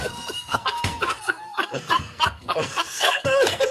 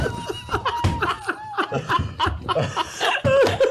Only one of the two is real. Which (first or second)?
second